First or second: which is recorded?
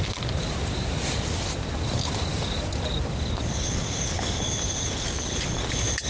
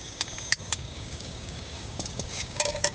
first